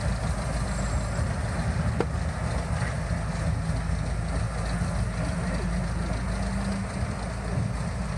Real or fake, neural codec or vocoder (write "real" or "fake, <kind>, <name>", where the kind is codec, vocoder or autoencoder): real